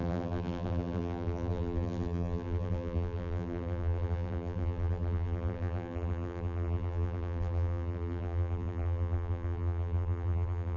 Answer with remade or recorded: remade